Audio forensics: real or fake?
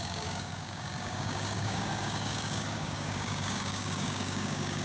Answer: fake